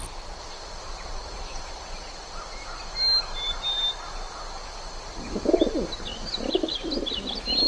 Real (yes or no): yes